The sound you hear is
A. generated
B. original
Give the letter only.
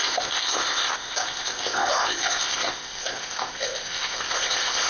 A